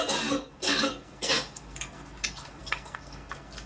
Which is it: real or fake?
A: fake